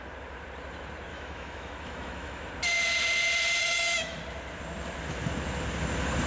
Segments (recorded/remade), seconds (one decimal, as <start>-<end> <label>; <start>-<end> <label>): 0.0-1.1 recorded; 1.1-2.5 remade; 2.5-3.6 recorded; 3.6-4.2 remade; 4.2-6.3 recorded